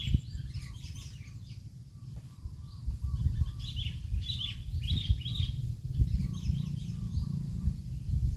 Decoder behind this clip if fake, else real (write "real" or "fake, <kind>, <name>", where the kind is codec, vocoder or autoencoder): fake, vocoder, BigVGAN v2